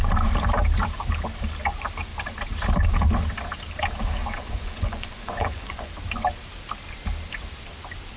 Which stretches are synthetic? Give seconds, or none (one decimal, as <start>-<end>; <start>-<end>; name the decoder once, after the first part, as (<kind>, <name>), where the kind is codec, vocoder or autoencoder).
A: 4.2-5.9 (vocoder, Vocos)